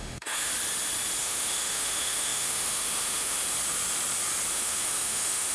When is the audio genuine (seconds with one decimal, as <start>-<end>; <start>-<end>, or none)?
0.5-1.2; 3.4-4.5